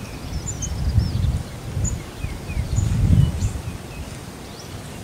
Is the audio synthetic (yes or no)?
no